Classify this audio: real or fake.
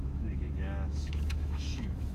fake